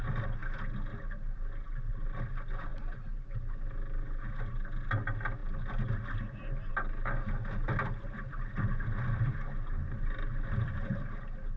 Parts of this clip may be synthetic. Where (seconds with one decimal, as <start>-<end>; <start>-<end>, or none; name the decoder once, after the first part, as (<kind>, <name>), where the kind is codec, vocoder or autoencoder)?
none